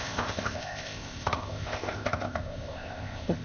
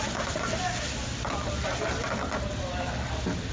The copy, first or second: first